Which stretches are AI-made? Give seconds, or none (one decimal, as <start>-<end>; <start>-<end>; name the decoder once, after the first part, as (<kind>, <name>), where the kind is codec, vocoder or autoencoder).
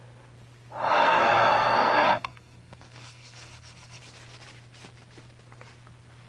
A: 0.9-4.0 (codec, SNAC)